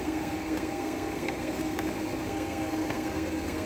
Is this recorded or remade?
remade